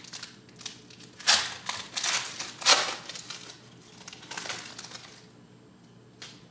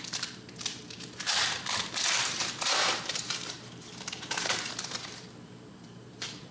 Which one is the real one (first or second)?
first